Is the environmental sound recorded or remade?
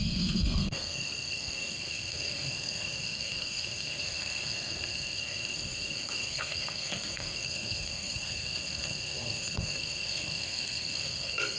remade